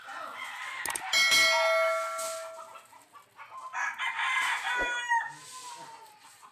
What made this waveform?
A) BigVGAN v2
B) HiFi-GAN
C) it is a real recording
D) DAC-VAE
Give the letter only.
C